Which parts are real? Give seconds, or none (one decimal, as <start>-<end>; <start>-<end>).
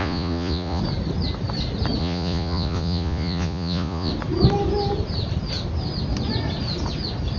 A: 0.8-2.0; 4.1-7.4